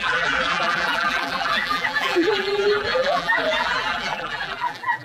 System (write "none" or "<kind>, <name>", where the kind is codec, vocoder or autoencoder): vocoder, BigVGAN v2